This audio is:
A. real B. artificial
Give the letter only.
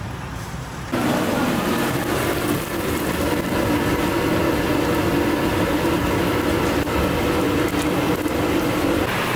A